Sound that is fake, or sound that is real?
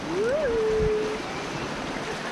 real